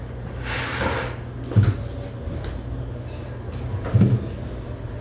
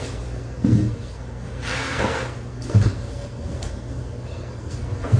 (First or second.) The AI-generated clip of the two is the second